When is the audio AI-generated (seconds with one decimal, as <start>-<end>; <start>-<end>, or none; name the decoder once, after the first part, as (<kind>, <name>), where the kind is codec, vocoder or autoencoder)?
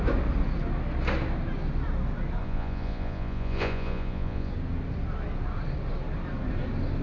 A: 2.4-4.5 (vocoder, Vocos)